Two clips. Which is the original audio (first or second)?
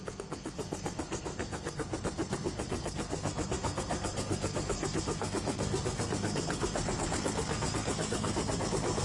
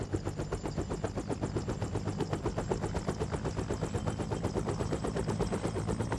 second